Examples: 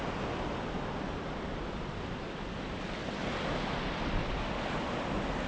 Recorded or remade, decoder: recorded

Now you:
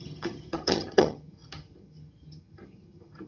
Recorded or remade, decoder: remade, vocoder, HiFi-GAN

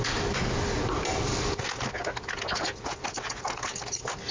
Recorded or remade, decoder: recorded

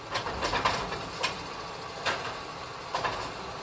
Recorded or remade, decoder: recorded